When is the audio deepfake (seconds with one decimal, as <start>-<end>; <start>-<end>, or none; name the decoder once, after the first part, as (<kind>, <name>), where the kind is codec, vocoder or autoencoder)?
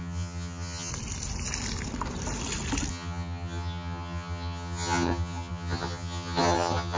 0.0-0.9 (vocoder, HiFi-GAN); 2.9-7.0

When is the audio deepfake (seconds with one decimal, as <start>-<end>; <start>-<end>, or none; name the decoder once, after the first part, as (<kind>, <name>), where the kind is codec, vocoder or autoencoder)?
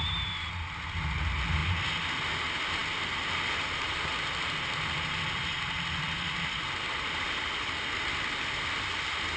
none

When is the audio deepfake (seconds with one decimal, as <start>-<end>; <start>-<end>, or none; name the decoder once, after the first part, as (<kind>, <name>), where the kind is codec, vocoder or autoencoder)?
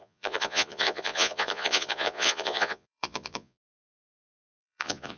0.0-5.2 (vocoder, Vocos)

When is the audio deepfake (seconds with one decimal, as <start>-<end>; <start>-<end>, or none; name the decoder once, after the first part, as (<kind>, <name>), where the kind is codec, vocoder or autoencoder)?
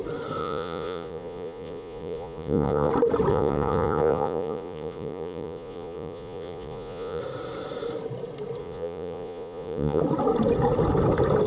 0.4-2.9 (vocoder, Vocos); 3.3-7.2; 8.6-10.0